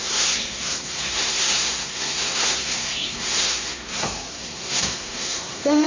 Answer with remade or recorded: remade